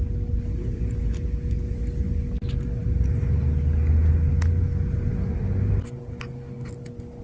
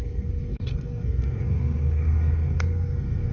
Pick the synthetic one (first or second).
second